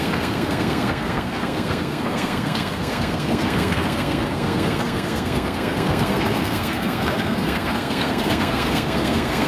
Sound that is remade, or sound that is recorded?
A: remade